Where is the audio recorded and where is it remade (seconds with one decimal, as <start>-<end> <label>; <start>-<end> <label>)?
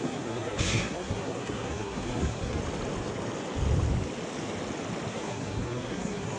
0.0-2.6 remade; 2.6-5.1 recorded; 5.1-6.4 remade